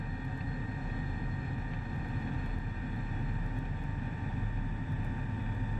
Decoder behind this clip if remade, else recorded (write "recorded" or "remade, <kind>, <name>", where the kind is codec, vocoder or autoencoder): recorded